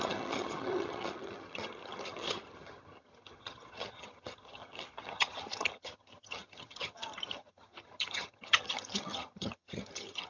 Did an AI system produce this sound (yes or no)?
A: yes